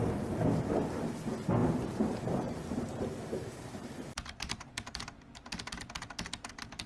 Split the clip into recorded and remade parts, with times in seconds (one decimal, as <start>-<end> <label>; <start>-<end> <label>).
0.0-1.6 recorded; 1.6-4.7 remade; 4.7-6.9 recorded